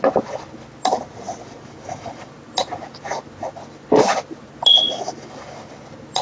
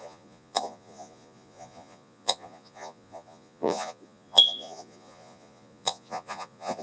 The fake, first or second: second